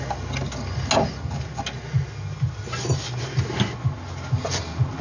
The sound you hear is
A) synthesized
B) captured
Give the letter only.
B